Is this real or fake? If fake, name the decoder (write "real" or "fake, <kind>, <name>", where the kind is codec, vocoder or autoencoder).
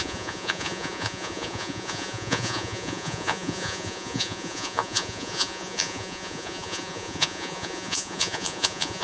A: fake, vocoder, Vocos